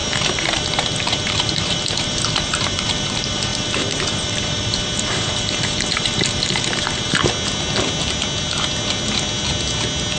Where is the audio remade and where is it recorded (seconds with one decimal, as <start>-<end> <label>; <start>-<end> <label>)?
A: 0.0-7.2 remade; 7.2-10.2 recorded